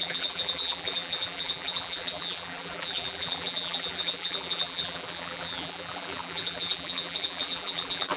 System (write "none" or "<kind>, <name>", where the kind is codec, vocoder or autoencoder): vocoder, BigVGAN v2